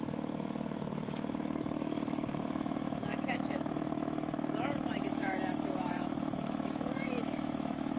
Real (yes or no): no